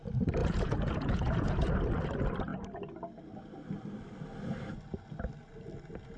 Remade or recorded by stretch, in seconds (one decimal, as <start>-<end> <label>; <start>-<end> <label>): 0.0-0.4 recorded; 0.4-1.7 remade; 1.7-6.2 recorded